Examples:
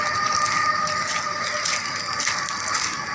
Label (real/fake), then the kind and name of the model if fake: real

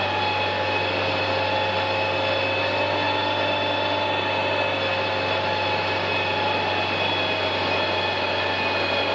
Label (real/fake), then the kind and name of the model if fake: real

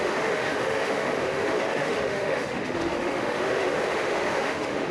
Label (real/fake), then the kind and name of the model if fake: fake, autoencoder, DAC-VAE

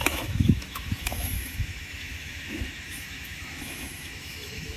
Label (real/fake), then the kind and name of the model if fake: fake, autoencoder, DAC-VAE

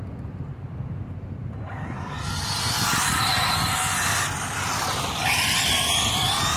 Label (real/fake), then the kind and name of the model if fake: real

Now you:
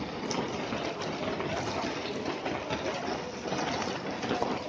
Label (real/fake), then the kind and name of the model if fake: real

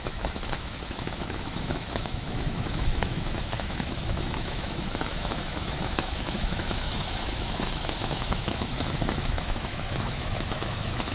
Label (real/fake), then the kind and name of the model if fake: fake, autoencoder, DAC-VAE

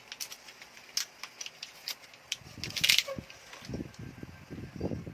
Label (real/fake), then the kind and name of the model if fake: real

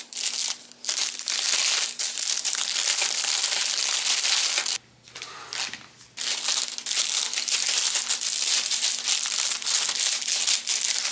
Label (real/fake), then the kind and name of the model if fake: real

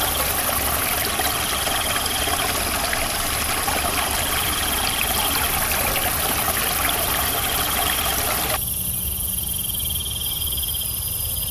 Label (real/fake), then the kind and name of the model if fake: real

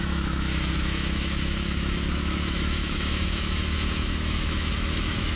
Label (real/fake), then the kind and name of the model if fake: fake, autoencoder, DAC-VAE